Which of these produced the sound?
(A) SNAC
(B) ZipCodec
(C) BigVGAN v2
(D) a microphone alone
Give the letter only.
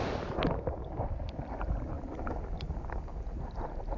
D